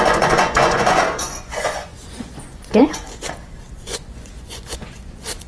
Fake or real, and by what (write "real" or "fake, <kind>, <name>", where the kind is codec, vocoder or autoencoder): fake, vocoder, Vocos